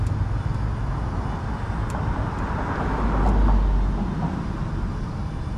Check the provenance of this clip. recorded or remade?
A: recorded